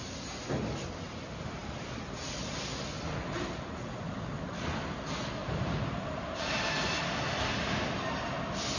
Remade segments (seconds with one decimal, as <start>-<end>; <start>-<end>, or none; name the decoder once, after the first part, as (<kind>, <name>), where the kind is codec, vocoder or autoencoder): 5.4-7.0 (vocoder, BigVGAN v2)